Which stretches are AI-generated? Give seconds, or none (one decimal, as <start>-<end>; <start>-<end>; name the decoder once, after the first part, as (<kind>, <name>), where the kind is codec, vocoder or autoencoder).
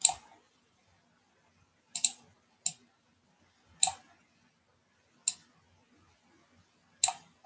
none